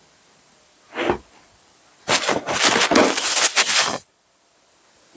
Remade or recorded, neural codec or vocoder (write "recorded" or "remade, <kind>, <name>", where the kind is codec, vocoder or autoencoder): recorded